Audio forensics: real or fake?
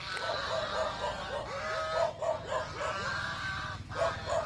real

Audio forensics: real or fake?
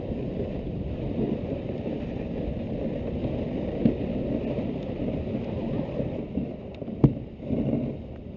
real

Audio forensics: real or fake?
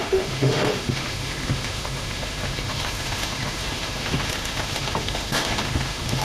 fake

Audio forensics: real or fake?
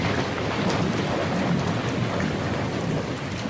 real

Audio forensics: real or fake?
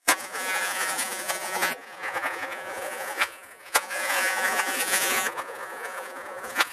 fake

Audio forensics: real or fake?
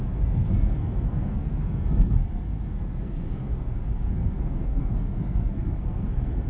fake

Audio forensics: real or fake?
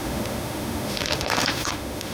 fake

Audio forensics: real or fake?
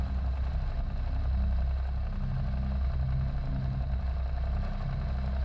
real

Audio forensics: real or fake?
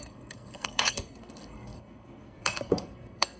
fake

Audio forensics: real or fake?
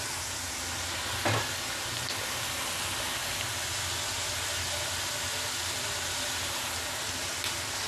real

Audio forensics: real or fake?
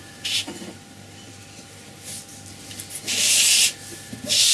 real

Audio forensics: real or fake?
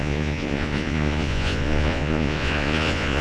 fake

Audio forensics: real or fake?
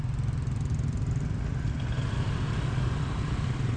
real